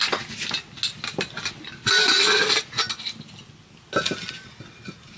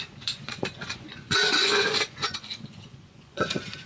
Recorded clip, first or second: first